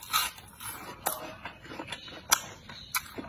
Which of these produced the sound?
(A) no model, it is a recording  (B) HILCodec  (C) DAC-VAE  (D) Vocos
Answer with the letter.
A